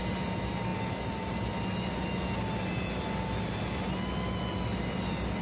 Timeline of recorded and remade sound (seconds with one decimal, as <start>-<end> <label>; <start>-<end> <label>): 0.0-5.4 recorded